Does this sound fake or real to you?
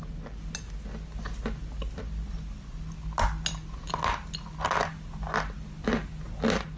real